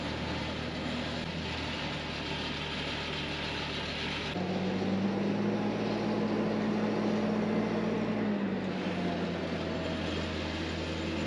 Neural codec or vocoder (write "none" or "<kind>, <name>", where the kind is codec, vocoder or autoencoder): none